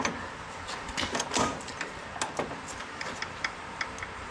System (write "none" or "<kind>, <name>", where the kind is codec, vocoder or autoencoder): none